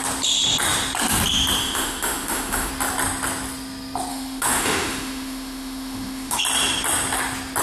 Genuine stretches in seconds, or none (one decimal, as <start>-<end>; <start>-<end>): 0.0-1.6; 2.7-4.1; 6.4-7.6